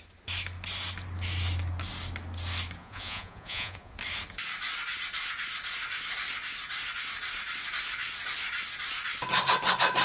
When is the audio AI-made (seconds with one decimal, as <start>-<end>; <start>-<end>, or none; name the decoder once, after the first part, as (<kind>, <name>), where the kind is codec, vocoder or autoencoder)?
2.8-3.9 (vocoder, Vocos)